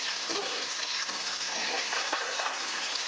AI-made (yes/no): yes